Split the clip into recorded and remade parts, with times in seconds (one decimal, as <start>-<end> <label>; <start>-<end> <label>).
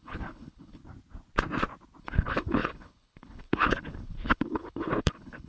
0.0-0.8 remade; 0.8-2.0 recorded; 2.0-5.5 remade